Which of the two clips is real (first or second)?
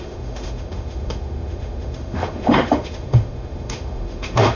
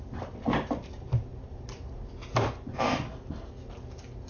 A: second